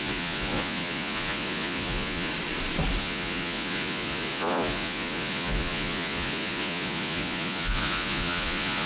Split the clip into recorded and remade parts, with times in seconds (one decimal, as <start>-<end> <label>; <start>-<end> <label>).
0.0-2.3 remade; 2.3-3.0 recorded; 3.0-8.9 remade